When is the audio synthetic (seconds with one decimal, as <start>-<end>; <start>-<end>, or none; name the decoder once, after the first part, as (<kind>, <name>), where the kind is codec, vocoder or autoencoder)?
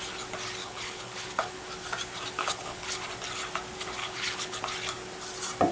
0.6-1.6 (codec, HILCodec); 2.4-2.9; 4.0-4.6